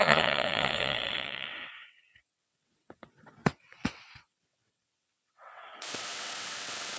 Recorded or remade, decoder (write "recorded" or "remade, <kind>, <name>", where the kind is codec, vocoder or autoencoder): remade, vocoder, WaveNeXt